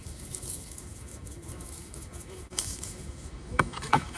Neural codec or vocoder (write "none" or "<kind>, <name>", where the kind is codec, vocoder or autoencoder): autoencoder, DAC-VAE